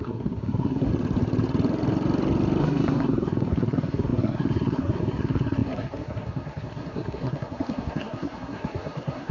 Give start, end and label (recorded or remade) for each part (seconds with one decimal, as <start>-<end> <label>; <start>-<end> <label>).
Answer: 0.0-0.9 remade; 0.9-2.6 recorded; 2.6-9.3 remade